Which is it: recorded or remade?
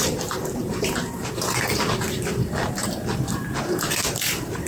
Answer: remade